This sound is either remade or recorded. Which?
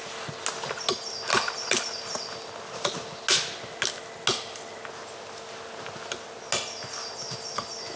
recorded